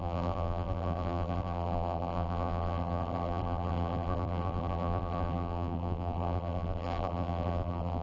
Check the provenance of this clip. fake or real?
fake